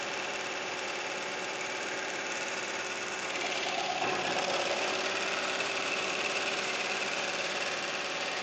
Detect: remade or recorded remade